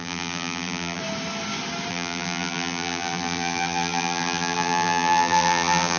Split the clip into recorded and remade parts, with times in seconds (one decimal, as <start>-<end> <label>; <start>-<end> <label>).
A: 0.0-1.0 remade; 1.0-1.9 recorded; 1.9-6.0 remade